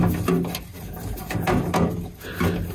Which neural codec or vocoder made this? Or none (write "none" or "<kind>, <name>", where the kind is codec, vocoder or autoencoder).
none